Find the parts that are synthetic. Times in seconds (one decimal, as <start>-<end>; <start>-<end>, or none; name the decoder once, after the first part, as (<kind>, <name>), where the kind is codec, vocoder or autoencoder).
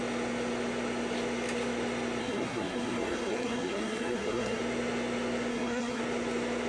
2.2-4.6 (codec, SNAC); 5.5-6.0